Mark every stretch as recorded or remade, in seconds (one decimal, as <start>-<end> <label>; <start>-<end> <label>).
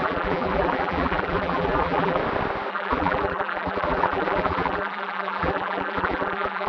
0.0-2.2 remade; 2.2-2.7 recorded; 2.7-6.7 remade